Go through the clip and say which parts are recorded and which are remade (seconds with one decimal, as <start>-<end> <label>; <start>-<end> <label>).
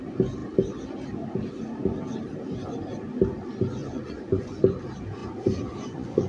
0.0-3.8 recorded; 3.8-4.6 remade; 4.6-5.2 recorded; 5.2-6.3 remade